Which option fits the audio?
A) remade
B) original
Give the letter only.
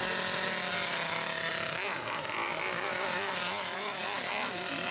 B